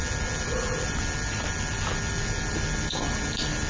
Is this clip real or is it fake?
real